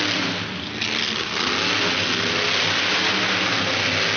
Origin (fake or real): real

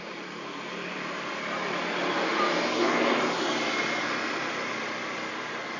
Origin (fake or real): real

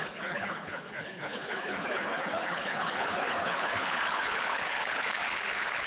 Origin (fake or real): fake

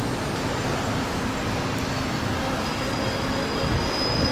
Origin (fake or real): real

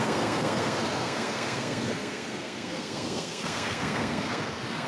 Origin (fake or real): fake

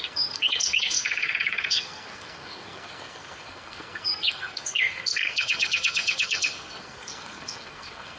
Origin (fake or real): fake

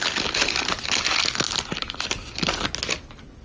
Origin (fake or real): real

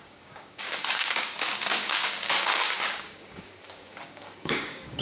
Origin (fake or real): fake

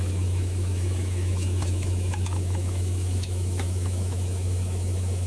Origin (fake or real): fake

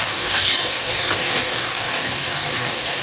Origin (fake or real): fake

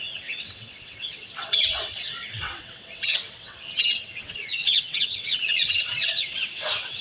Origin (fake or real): fake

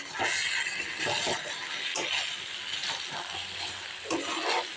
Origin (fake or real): real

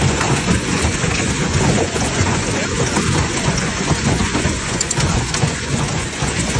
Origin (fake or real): fake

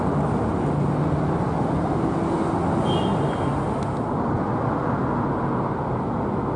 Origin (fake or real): real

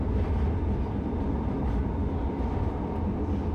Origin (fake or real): real